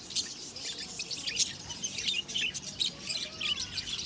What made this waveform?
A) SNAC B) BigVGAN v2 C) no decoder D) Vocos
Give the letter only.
C